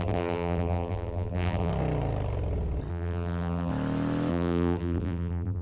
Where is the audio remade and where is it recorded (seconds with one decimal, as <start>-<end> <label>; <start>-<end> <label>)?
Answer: 0.0-1.7 remade; 1.7-2.9 recorded; 2.9-3.7 remade; 3.7-4.3 recorded; 4.3-5.6 remade